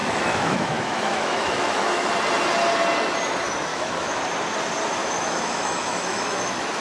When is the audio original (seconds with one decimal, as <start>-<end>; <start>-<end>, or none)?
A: 2.1-3.7; 4.2-5.0